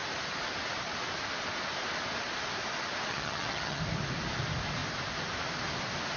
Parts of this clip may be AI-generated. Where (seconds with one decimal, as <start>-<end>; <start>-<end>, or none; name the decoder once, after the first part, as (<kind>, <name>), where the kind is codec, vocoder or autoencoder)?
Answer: 3.1-3.8 (vocoder, HiFi-GAN)